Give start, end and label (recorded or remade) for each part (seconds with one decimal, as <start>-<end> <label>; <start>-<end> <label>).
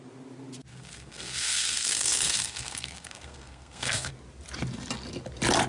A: 0.0-0.7 recorded; 0.7-4.1 remade; 4.1-5.7 recorded